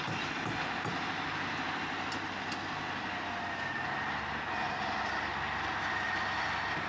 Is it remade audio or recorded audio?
recorded